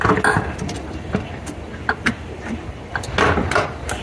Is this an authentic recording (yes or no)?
yes